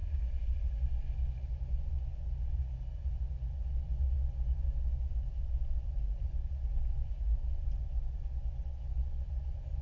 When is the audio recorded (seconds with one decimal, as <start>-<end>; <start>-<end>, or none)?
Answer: 0.0-9.8